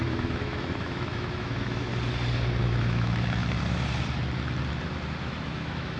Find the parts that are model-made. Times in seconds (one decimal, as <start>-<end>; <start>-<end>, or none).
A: 0.0-1.9; 2.6-3.4; 5.2-6.0